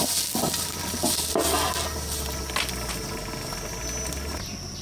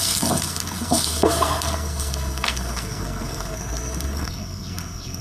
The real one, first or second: first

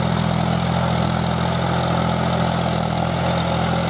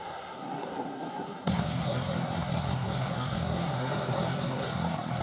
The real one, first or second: first